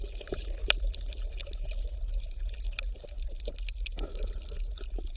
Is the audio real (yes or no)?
yes